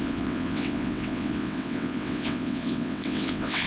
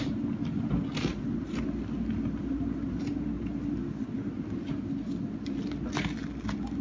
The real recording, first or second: second